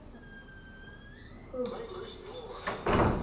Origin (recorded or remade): recorded